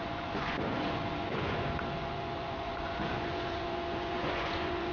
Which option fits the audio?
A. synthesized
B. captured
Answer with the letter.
A